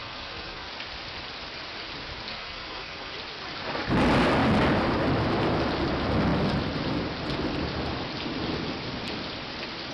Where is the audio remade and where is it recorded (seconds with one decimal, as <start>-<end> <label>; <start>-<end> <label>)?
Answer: 0.0-0.7 remade; 0.7-2.3 recorded; 2.3-3.1 remade; 3.1-9.9 recorded